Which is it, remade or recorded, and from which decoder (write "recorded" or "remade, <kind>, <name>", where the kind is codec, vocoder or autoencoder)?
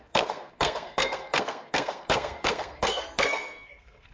remade, codec, SNAC